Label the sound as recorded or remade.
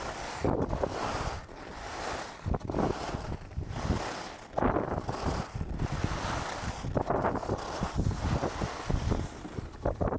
recorded